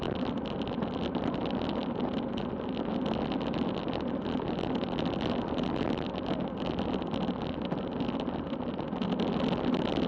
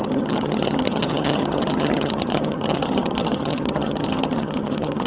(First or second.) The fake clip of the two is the second